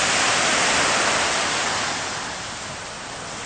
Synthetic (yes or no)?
no